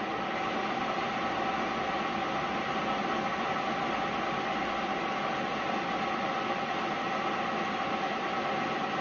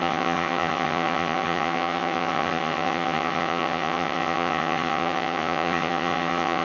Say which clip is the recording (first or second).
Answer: first